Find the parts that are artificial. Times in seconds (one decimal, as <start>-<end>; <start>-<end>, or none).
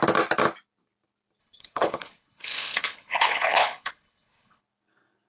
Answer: 1.4-4.6